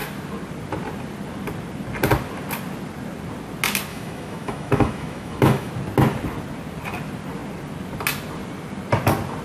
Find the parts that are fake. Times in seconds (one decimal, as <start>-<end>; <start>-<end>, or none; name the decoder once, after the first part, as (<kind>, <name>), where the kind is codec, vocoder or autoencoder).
3.9-5.7 (autoencoder, DAC-VAE)